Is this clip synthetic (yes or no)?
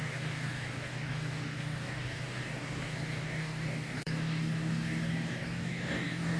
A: yes